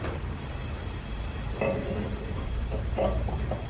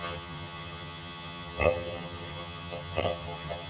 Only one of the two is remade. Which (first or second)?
second